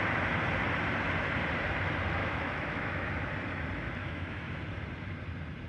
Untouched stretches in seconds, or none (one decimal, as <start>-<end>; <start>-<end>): 0.0-2.2; 3.3-4.0; 4.6-5.7